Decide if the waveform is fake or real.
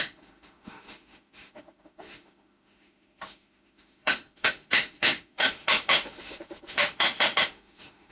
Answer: fake